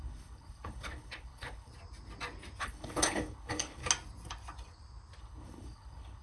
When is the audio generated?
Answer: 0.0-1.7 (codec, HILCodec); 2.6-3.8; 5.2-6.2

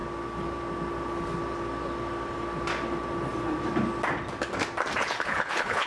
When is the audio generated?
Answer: 5.0-5.9 (codec, HILCodec)

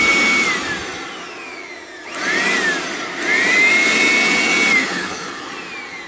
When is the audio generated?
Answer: 4.8-5.5 (codec, HILCodec)